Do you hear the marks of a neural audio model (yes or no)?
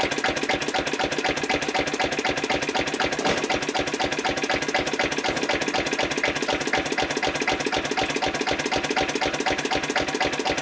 no